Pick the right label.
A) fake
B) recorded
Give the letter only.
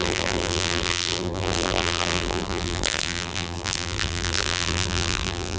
A